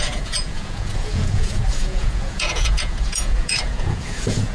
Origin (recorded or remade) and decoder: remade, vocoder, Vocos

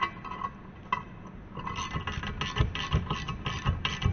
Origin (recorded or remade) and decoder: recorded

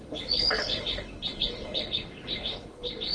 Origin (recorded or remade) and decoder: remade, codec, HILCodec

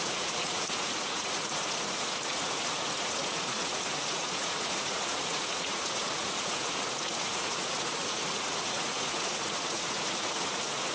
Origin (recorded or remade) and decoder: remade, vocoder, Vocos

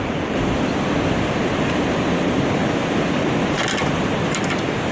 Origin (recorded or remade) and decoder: recorded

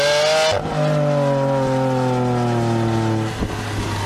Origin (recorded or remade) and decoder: recorded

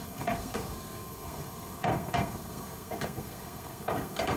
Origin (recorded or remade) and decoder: remade, codec, SNAC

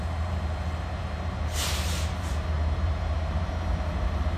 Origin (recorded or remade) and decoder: remade, vocoder, BigVGAN v2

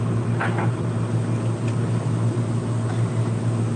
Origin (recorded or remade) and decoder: recorded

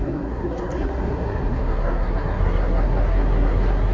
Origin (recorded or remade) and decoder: remade, codec, SNAC